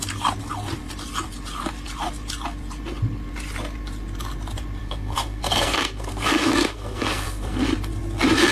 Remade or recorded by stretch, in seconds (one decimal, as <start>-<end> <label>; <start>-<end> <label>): 0.0-4.8 recorded; 4.8-7.7 remade; 7.7-8.5 recorded